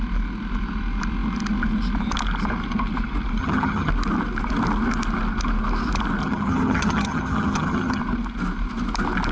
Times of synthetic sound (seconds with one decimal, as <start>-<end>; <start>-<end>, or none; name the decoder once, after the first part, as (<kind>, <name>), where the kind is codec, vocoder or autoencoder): 3.4-3.9 (vocoder, HiFi-GAN); 6.2-8.0

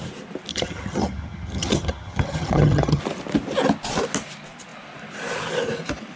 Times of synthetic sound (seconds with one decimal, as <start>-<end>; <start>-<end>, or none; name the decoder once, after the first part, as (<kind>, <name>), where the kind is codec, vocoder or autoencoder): 0.5-3.0 (vocoder, HiFi-GAN)

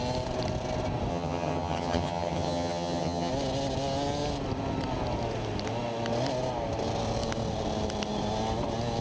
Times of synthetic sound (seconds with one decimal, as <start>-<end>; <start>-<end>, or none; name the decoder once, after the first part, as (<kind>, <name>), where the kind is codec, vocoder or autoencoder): 1.1-3.3 (vocoder, HiFi-GAN)